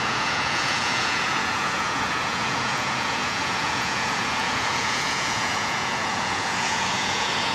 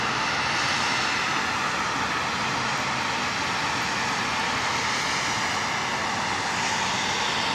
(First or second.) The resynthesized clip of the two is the first